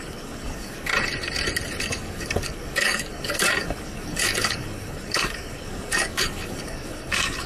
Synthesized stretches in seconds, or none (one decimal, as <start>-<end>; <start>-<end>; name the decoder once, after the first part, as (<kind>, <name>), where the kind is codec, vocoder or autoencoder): 0.0-0.9 (codec, DAC); 1.8-7.5